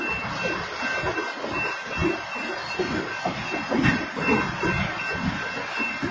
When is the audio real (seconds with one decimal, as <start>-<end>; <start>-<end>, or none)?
0.0-6.1